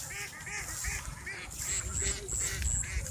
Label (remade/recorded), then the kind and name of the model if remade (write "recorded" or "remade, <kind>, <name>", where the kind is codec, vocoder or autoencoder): recorded